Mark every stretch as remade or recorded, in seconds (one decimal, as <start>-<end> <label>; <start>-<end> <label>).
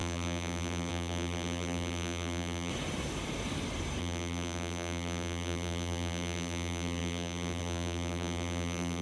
0.0-2.7 remade; 2.7-4.0 recorded; 4.0-9.0 remade